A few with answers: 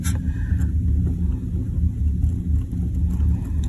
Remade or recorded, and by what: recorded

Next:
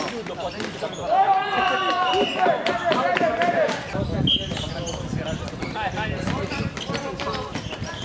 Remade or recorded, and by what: recorded